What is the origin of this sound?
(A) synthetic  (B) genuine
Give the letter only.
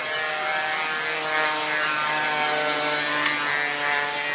B